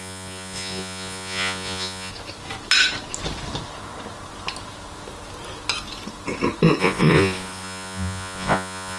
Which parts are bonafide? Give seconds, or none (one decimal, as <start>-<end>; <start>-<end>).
2.1-6.8